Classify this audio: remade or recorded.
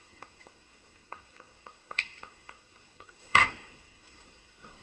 remade